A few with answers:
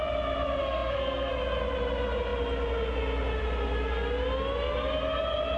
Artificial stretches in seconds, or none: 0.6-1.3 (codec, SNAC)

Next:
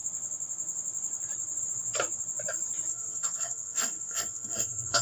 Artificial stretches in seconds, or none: 2.9-5.0 (codec, SNAC)

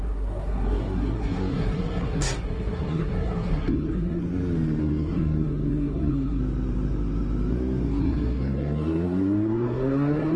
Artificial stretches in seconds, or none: 0.0-4.2 (codec, SNAC); 4.8-6.4; 8.0-10.4